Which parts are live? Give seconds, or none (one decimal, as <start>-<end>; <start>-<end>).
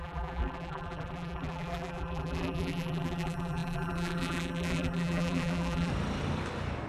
5.9-6.9